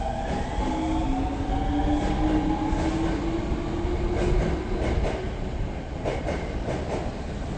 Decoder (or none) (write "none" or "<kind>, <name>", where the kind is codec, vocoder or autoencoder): none